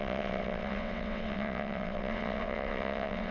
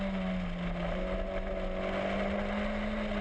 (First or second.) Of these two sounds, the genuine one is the second